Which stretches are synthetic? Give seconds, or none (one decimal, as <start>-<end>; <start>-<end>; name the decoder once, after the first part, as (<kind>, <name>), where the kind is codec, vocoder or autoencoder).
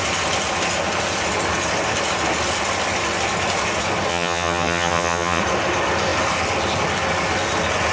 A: 4.1-5.4 (vocoder, HiFi-GAN)